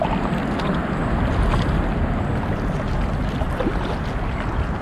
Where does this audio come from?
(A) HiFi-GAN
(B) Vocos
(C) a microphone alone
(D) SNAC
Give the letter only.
C